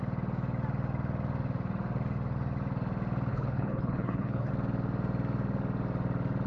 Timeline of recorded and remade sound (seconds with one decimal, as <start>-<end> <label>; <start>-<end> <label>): 0.0-3.3 recorded; 3.3-4.5 remade; 4.5-6.5 recorded

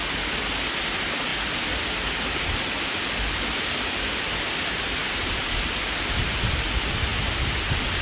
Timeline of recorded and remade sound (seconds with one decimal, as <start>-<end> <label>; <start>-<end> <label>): 0.0-8.0 recorded

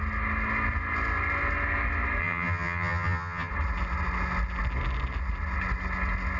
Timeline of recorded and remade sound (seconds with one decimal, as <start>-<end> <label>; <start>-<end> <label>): 0.0-2.2 recorded; 2.2-3.5 remade; 3.5-6.4 recorded

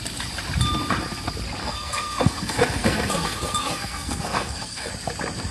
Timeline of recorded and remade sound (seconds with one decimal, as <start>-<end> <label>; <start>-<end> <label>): 0.0-1.6 recorded; 1.6-4.9 remade; 4.9-5.5 recorded

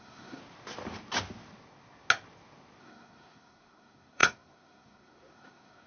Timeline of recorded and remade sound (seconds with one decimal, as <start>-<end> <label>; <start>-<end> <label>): 0.0-0.4 remade; 0.4-2.8 recorded; 2.8-5.9 remade

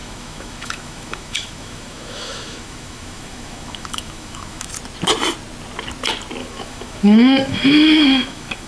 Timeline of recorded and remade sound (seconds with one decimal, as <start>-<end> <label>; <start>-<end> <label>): 0.0-4.7 remade; 4.7-6.4 recorded; 6.4-8.7 remade

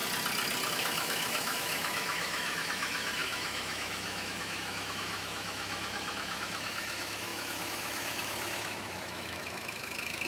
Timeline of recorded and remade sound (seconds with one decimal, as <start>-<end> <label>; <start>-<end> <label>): 0.0-0.7 recorded; 0.7-10.3 remade

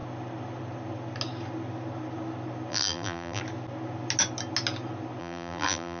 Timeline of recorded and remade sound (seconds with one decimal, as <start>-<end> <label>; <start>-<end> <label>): 0.0-2.7 recorded; 2.7-3.4 remade; 3.4-5.2 recorded; 5.2-6.0 remade